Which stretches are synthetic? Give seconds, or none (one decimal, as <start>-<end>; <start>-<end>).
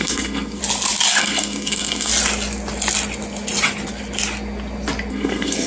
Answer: 0.0-0.6; 1.2-2.1; 5.1-5.7